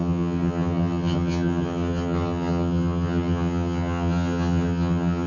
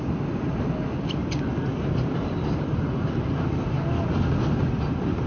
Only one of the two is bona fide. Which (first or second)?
second